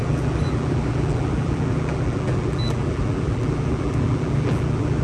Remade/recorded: remade